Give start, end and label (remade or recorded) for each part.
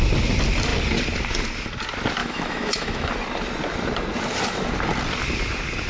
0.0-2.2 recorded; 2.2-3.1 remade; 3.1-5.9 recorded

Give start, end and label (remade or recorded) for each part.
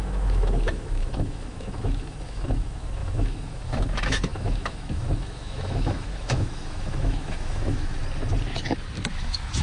0.0-8.0 remade; 8.0-9.1 recorded; 9.1-9.6 remade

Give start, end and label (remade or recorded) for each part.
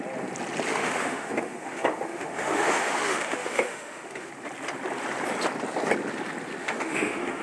0.0-0.7 recorded; 0.7-4.3 remade; 4.3-6.6 recorded; 6.6-7.4 remade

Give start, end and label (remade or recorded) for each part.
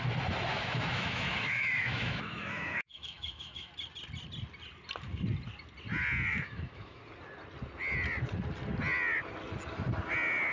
0.0-0.5 recorded; 0.5-3.7 remade; 3.7-6.3 recorded; 6.3-7.0 remade; 7.0-10.5 recorded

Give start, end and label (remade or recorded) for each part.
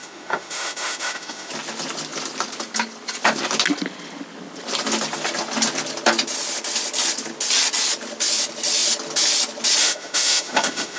0.0-1.5 remade; 1.5-9.8 recorded; 9.8-11.0 remade